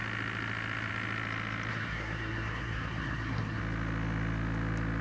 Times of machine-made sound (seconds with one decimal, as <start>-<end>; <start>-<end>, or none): 1.7-3.6